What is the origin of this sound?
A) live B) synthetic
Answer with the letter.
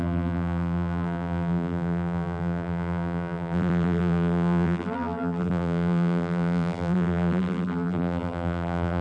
B